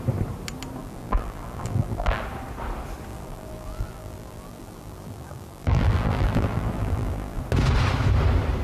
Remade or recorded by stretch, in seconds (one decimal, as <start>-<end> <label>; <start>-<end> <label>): 0.0-0.8 recorded; 0.8-2.2 remade; 2.2-3.1 recorded; 3.1-7.4 remade; 7.4-8.6 recorded

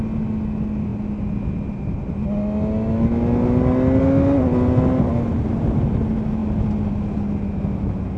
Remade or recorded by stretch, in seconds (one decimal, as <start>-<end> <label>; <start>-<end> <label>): 0.0-8.2 recorded

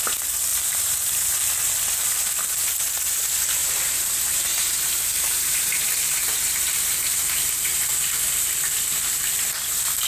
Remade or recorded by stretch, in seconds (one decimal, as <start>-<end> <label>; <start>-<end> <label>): 0.0-0.5 recorded; 0.5-1.7 remade; 1.7-3.6 recorded; 3.6-4.4 remade; 4.4-5.1 recorded; 5.1-7.8 remade; 7.8-10.1 recorded

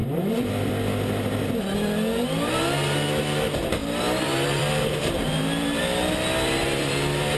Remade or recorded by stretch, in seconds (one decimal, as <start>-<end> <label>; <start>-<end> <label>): 0.0-0.7 remade; 0.7-3.8 recorded; 3.8-5.8 remade; 5.8-7.4 recorded

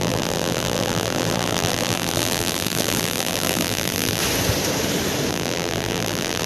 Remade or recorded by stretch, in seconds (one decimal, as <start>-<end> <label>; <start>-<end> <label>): 0.0-4.2 remade; 4.2-5.3 recorded; 5.3-6.5 remade

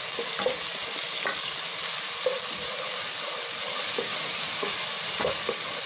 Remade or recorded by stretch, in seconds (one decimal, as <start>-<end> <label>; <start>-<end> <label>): 0.0-2.3 recorded; 2.3-3.0 remade; 3.0-5.9 recorded

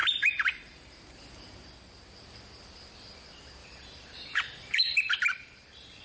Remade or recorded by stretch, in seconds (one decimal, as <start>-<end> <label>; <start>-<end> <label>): 0.0-1.3 remade; 1.3-3.6 recorded; 3.6-6.0 remade

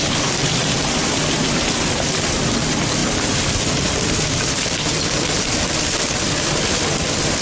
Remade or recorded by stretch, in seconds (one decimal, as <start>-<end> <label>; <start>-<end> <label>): 0.0-1.0 remade; 1.0-1.7 recorded; 1.7-7.4 remade